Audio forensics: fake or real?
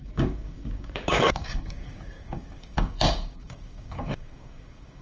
fake